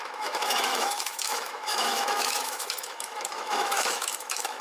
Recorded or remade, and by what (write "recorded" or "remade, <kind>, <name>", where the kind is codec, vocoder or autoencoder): remade, autoencoder, DAC-VAE